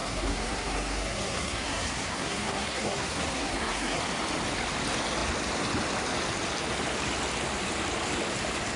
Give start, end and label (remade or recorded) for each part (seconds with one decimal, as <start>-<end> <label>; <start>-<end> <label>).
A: 0.0-4.0 remade; 4.0-8.8 recorded

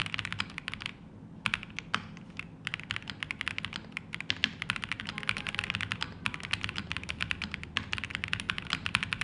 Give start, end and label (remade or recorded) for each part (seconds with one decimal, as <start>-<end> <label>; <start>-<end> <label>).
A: 0.0-9.2 recorded

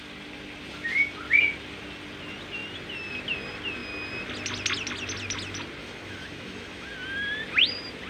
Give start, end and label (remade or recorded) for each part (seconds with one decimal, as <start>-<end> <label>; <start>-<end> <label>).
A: 0.0-5.8 recorded; 5.8-6.9 remade; 6.9-8.1 recorded

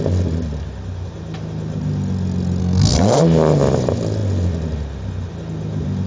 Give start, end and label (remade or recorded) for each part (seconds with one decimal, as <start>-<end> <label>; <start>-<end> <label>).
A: 0.0-2.6 recorded; 2.6-3.2 remade; 3.2-6.1 recorded

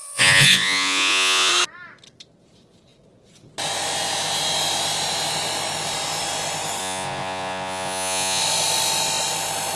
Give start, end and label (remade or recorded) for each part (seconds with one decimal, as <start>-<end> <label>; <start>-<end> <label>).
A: 0.0-1.5 remade; 1.5-6.8 recorded; 6.8-8.4 remade; 8.4-9.8 recorded

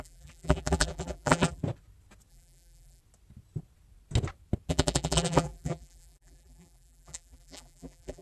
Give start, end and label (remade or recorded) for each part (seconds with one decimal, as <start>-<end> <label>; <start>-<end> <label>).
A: 0.0-1.6 remade; 1.6-2.3 recorded; 2.3-3.0 remade; 3.0-4.7 recorded; 4.7-8.2 remade